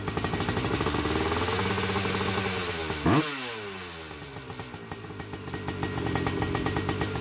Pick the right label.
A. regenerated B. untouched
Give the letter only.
B